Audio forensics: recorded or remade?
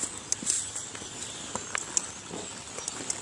recorded